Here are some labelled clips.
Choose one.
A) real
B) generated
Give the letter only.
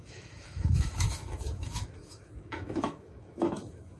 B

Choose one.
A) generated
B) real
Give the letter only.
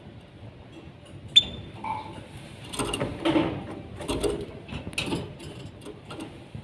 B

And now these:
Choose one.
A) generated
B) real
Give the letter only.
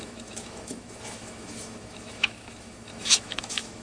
A